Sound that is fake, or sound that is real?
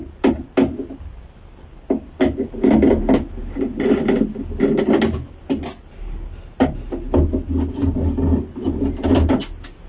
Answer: real